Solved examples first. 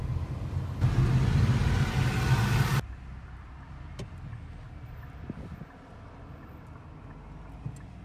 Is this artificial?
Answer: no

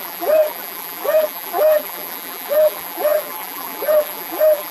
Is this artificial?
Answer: yes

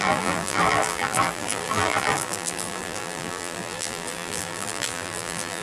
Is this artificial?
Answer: yes